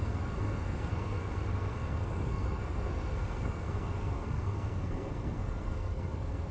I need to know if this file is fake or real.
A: fake